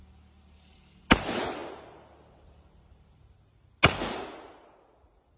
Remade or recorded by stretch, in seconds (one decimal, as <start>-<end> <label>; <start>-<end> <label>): 0.0-5.4 recorded